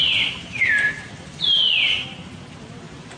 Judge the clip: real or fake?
fake